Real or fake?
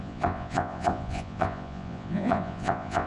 fake